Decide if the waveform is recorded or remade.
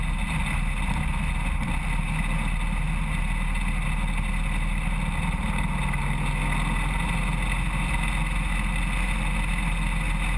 recorded